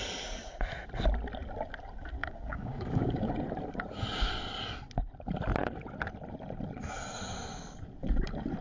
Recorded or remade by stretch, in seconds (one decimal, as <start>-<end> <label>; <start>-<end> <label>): 0.0-2.2 recorded; 2.2-3.3 remade; 3.3-8.6 recorded